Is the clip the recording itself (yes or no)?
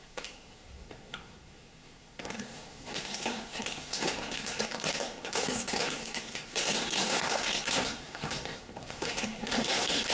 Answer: no